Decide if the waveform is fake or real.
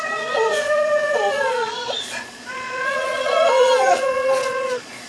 fake